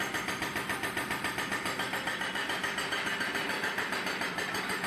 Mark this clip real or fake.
real